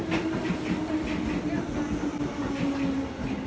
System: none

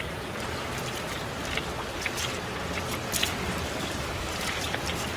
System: none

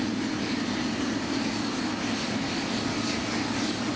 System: none